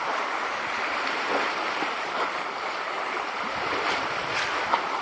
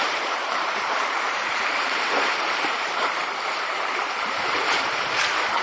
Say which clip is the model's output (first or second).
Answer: second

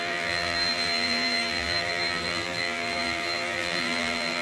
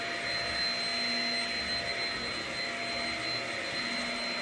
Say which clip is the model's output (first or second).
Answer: first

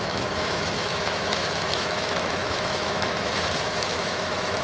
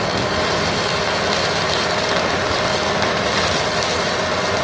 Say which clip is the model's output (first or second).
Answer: first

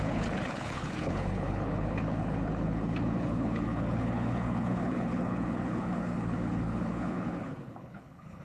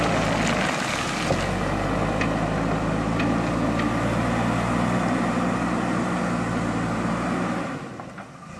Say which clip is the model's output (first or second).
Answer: first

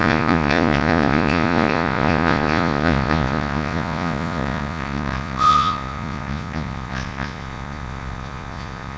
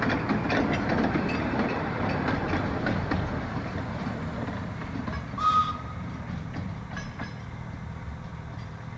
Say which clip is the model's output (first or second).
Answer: first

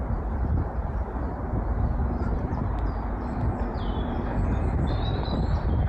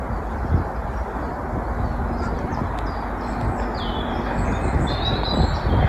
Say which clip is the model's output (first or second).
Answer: first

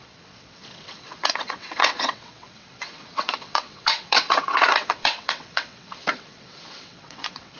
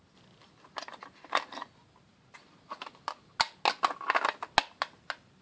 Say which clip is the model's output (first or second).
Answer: first